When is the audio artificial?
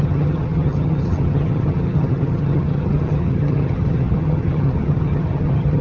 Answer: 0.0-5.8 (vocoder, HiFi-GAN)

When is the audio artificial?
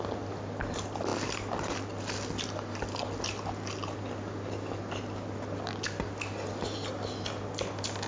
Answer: none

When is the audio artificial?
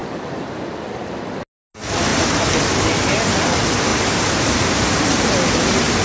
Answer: 2.1-2.6 (vocoder, BigVGAN v2); 3.9-6.0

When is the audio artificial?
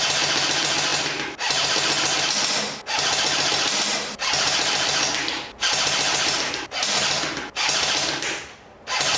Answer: none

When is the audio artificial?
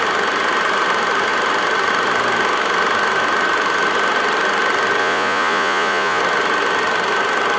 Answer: 5.0-6.2 (vocoder, Vocos)